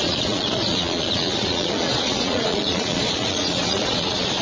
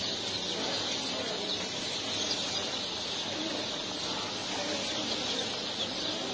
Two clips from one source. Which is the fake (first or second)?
first